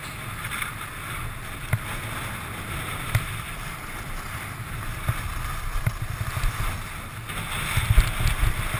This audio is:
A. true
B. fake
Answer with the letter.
A